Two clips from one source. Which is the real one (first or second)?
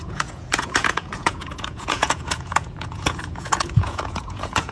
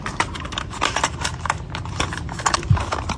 second